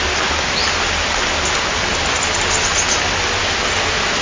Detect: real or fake real